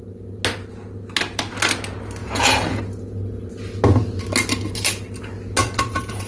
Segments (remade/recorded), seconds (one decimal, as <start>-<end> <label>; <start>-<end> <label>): 0.0-2.2 recorded; 2.2-2.8 remade; 2.8-5.6 recorded; 5.6-6.3 remade